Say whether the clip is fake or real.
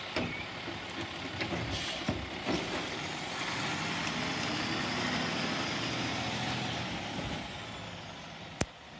real